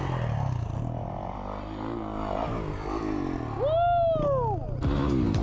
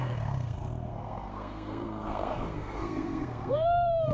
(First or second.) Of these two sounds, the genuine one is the first